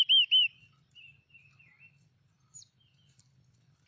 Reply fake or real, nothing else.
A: real